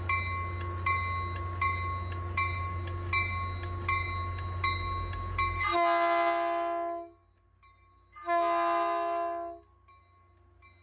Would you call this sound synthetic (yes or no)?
no